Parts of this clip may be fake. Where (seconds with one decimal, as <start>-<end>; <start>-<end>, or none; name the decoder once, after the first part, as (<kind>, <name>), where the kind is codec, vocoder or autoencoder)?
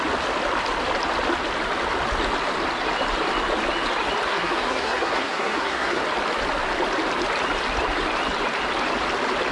4.3-6.0 (codec, SNAC)